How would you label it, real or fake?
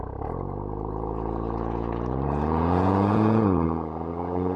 fake